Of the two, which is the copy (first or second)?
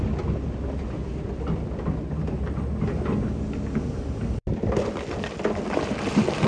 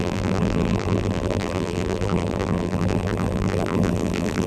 second